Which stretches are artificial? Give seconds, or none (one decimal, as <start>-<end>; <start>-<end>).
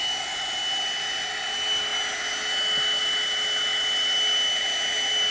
none